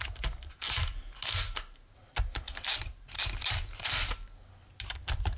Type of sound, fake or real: real